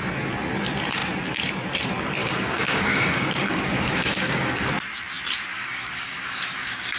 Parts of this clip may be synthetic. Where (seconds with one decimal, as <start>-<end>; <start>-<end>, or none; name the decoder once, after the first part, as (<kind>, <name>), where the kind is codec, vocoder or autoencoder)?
2.2-4.7 (codec, DAC); 5.5-7.0